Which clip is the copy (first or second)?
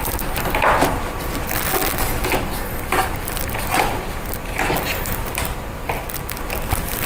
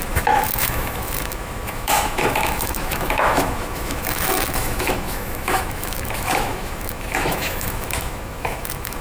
second